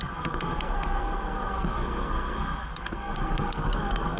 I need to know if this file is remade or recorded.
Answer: remade